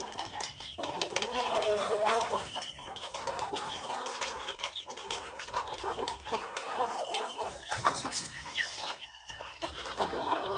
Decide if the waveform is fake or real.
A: fake